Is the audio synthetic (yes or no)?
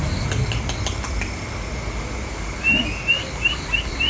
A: no